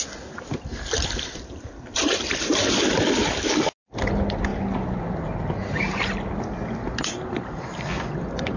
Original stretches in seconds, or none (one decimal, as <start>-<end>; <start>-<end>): 0.0-8.6